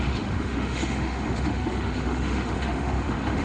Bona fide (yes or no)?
no